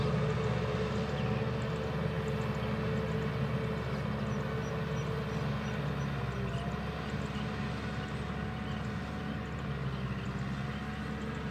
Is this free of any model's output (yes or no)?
yes